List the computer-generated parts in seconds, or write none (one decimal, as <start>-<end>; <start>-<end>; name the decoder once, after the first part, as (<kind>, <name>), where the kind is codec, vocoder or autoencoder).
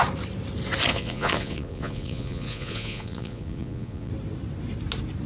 0.9-4.1 (vocoder, Vocos)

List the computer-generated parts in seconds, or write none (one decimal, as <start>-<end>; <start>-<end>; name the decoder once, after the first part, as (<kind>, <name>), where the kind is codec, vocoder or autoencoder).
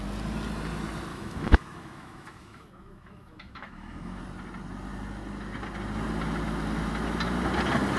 1.1-4.2 (autoencoder, DAC-VAE)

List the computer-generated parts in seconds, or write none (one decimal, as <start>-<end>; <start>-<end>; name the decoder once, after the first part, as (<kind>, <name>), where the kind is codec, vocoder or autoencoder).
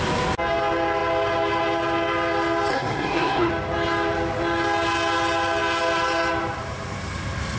2.7-3.5 (codec, SNAC)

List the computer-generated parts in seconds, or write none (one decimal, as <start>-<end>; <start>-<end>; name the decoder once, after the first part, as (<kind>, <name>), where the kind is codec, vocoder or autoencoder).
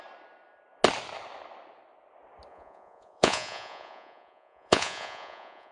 2.5-5.7 (vocoder, Vocos)